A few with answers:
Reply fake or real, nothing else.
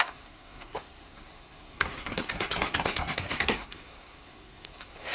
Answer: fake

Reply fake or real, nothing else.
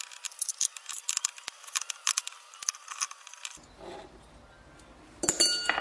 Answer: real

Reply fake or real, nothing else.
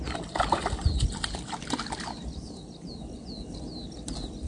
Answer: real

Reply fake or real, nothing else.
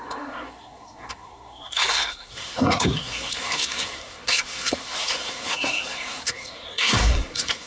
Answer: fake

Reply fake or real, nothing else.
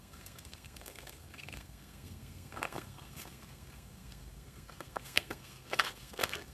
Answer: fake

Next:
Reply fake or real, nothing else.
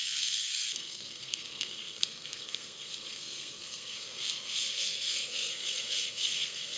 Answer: fake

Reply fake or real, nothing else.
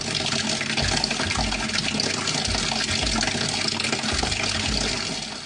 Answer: real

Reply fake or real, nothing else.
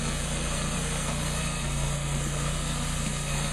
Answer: fake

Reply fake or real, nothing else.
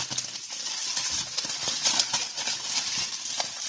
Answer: real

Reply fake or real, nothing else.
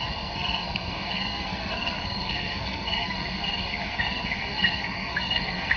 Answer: fake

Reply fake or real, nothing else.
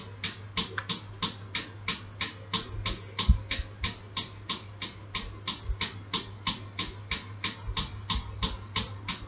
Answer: real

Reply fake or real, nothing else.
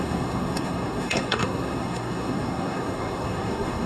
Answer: fake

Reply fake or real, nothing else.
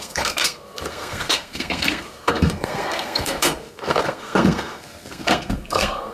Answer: fake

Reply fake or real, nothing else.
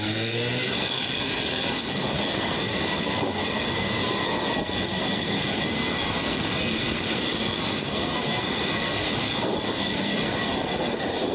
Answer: fake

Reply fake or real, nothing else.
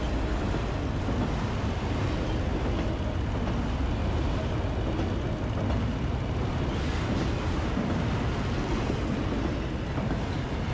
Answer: real